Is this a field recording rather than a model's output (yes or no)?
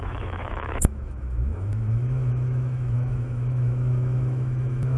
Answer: no